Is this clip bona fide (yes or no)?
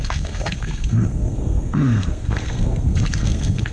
no